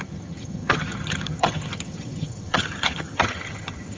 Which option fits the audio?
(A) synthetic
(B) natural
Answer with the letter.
A